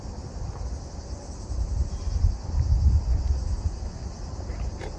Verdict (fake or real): real